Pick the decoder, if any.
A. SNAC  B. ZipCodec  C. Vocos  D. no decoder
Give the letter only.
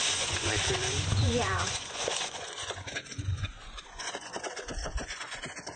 C